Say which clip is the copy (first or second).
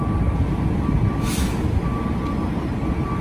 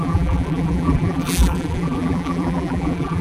second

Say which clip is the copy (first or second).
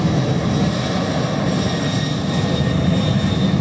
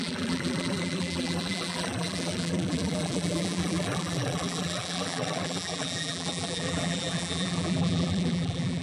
second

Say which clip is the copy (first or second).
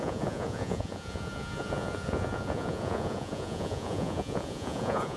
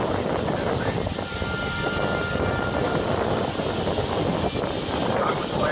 first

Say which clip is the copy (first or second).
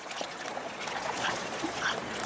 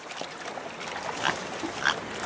first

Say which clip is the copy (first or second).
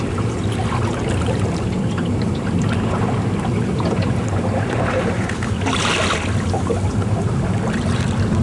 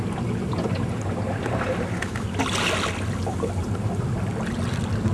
first